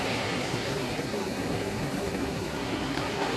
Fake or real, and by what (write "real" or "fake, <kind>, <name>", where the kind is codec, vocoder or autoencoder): fake, codec, SNAC